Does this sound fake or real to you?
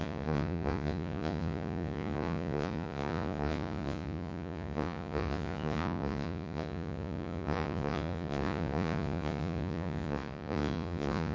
fake